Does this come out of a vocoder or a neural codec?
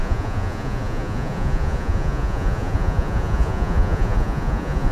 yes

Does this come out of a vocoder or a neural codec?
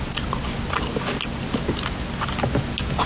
no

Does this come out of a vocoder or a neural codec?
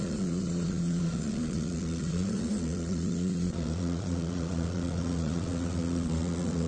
yes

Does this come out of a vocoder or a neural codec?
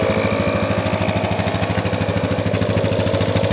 no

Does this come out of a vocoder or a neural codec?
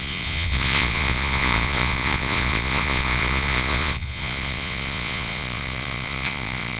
yes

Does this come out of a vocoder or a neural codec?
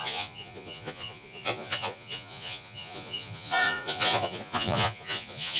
yes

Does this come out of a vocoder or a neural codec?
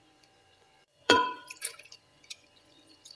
yes